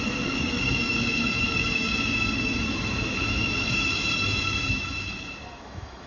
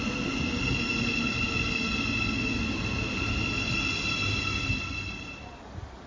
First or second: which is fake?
first